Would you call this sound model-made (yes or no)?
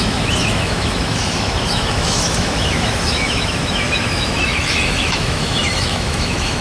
yes